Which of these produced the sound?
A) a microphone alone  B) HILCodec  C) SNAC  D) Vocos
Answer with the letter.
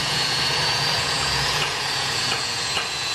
D